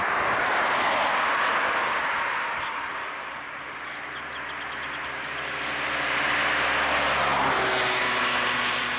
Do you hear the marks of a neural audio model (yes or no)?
no